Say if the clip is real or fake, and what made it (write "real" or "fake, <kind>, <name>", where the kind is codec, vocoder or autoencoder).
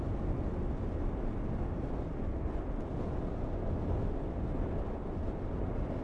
real